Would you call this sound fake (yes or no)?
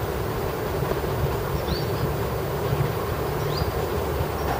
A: no